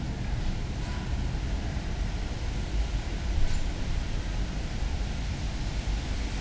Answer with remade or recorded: recorded